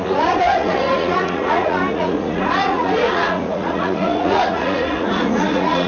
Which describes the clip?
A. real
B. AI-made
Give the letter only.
B